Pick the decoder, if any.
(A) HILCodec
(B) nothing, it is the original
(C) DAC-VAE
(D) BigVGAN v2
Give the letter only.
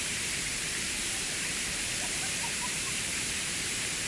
D